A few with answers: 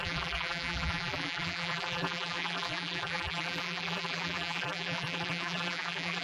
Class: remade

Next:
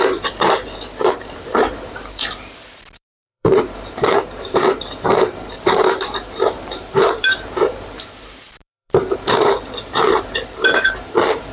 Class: remade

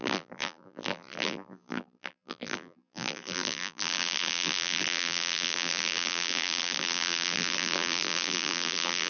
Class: remade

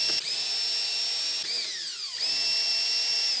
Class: recorded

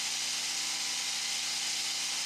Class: recorded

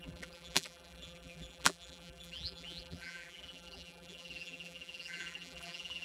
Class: remade